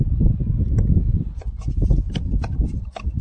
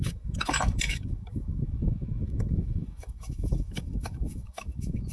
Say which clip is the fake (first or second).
second